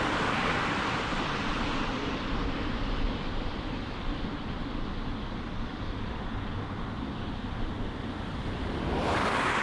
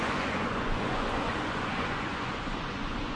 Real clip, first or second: first